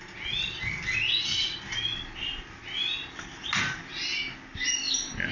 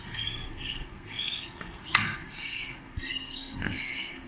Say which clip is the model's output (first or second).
second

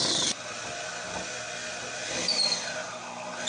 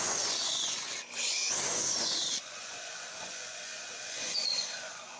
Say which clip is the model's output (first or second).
second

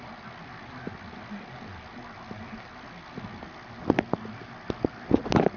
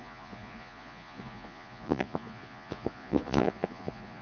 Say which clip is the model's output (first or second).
second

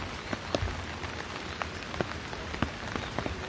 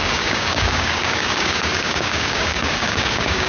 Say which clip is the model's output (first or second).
second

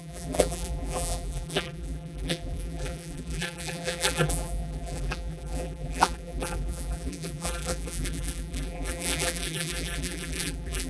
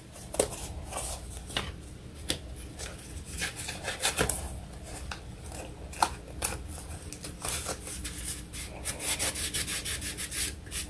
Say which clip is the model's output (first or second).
first